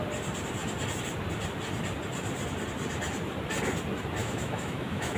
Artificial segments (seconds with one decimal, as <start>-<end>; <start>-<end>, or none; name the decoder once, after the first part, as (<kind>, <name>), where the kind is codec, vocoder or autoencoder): 4.2-5.2 (autoencoder, DAC-VAE)